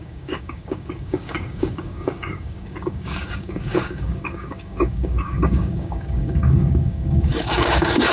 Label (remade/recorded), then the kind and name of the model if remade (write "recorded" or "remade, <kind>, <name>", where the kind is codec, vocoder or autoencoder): remade, codec, DAC